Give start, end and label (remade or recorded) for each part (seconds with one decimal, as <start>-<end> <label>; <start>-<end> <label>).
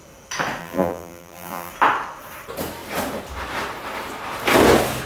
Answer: 0.0-0.6 recorded; 0.6-1.7 remade; 1.7-5.1 recorded